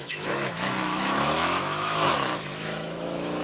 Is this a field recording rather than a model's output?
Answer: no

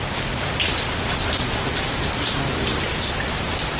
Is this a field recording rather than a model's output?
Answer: yes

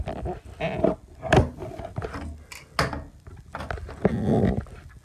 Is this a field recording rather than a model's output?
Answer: yes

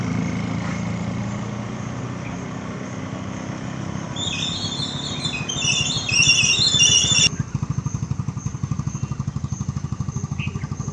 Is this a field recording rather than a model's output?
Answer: yes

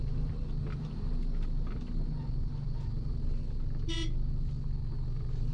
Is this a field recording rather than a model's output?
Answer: yes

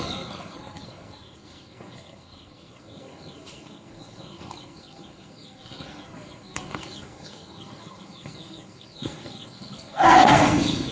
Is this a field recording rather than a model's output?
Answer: no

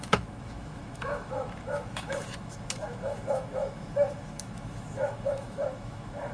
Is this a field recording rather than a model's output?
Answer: no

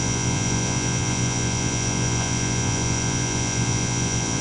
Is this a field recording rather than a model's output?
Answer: no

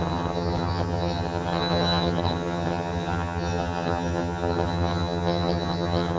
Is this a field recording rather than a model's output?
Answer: no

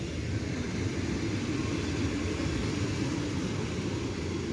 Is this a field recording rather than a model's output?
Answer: yes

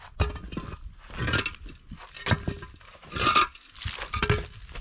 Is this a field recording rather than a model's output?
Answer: yes